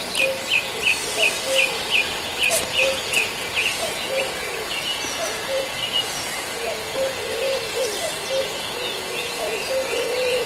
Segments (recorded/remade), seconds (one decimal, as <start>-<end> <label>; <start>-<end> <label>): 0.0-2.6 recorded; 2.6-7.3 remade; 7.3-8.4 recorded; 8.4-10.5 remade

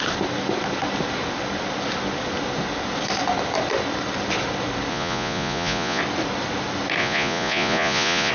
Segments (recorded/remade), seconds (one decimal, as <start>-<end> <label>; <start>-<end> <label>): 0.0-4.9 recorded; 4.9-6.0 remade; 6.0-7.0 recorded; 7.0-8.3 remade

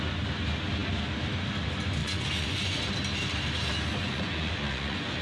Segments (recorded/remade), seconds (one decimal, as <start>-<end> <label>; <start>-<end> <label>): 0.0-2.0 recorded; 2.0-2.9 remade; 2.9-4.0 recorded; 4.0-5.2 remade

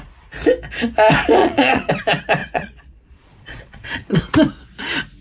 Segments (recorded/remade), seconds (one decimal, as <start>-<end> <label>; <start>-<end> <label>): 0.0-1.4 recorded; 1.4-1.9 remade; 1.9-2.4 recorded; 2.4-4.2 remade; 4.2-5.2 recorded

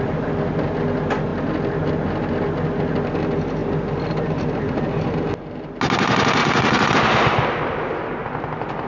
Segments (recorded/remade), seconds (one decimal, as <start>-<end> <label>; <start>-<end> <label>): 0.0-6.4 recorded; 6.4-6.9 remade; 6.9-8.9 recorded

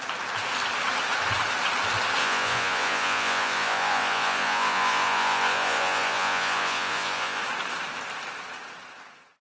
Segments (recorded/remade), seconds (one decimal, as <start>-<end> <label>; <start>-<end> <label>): 0.0-2.2 recorded; 2.2-7.4 remade; 7.4-9.5 recorded